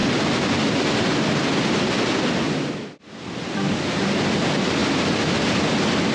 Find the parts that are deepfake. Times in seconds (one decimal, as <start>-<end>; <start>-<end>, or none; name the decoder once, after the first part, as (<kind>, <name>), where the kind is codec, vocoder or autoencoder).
none